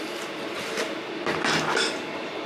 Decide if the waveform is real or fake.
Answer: real